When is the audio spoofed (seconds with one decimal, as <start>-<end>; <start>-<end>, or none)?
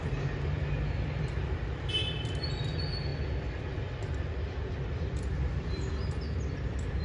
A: none